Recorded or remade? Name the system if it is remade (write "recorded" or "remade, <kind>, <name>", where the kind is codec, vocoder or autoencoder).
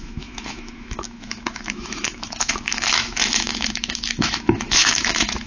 remade, autoencoder, DAC-VAE